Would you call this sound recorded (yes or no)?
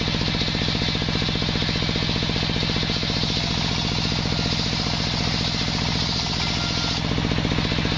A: yes